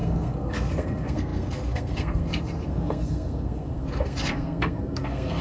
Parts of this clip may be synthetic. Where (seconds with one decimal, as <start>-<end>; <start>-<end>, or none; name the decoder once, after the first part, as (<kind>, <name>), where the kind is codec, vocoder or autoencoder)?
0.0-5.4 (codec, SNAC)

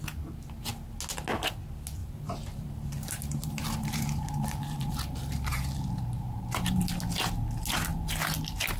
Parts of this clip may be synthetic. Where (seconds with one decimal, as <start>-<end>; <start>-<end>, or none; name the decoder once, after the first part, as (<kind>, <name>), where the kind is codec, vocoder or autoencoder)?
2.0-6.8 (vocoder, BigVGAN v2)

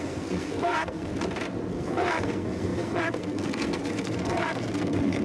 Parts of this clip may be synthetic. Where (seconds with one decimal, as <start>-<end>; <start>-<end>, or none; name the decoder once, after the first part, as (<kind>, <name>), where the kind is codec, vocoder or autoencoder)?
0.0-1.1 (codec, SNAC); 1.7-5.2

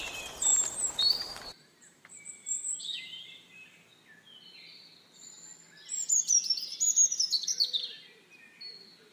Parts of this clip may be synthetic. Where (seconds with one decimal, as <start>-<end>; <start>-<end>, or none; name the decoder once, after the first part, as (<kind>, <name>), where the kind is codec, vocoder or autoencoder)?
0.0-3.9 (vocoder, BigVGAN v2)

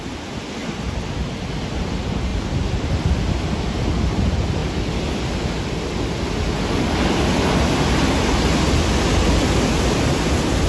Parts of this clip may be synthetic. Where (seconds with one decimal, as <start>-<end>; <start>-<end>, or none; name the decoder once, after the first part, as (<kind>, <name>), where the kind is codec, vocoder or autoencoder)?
0.6-1.5 (vocoder, BigVGAN v2); 2.3-2.9

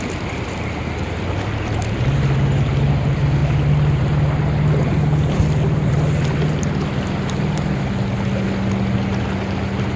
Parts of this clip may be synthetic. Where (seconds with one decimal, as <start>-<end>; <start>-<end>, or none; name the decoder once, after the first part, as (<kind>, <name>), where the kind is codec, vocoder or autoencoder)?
none

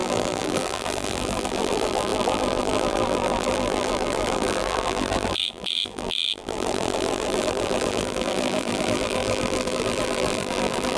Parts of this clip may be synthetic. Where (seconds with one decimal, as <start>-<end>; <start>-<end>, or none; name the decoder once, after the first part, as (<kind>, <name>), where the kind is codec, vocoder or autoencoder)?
0.0-11.0 (vocoder, BigVGAN v2)

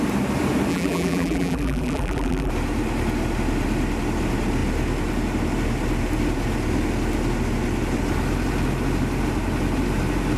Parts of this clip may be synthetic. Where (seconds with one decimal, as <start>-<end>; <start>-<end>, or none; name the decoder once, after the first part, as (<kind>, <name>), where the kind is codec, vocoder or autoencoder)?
0.7-2.5 (vocoder, BigVGAN v2)